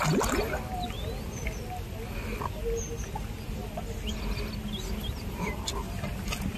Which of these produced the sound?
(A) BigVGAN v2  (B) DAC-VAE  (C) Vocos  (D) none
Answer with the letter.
D